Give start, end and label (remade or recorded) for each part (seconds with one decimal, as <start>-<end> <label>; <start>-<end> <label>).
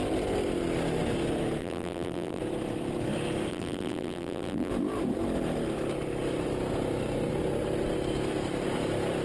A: 0.0-1.6 recorded; 1.6-2.4 remade; 2.4-3.5 recorded; 3.5-4.7 remade; 4.7-9.2 recorded